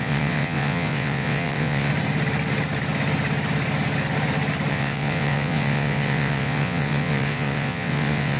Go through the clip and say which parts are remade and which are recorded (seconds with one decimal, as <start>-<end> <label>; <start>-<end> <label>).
0.0-1.9 remade; 1.9-4.7 recorded; 4.7-8.4 remade

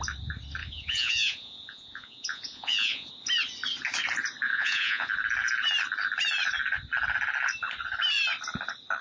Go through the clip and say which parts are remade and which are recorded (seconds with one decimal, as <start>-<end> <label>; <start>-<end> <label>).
0.0-0.6 recorded; 0.6-3.1 remade; 3.1-4.5 recorded; 4.5-5.1 remade; 5.1-9.0 recorded